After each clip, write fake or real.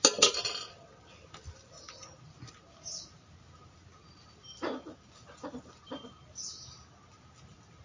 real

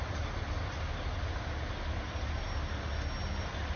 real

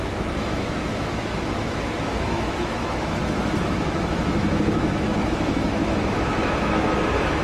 fake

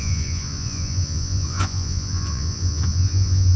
fake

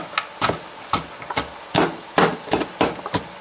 real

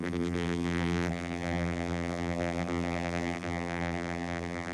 fake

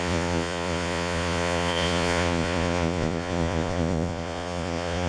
fake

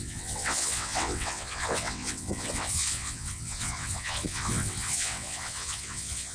fake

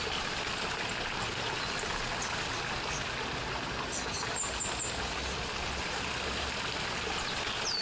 real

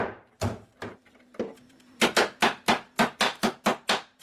fake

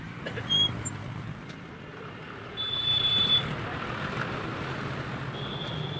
real